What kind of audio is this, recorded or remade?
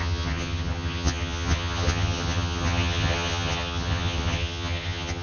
remade